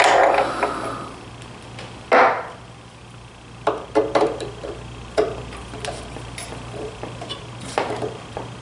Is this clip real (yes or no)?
yes